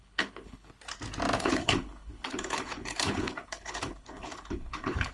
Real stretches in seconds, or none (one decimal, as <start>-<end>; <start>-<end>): 0.7-1.4